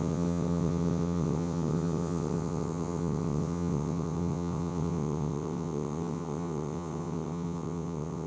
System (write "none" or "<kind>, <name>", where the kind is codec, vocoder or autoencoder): vocoder, WaveNeXt